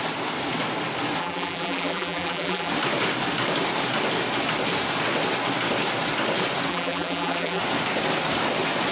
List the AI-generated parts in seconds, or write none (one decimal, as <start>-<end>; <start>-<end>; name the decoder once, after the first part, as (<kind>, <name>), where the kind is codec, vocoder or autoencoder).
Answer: 1.2-2.7 (vocoder, BigVGAN v2); 6.7-7.6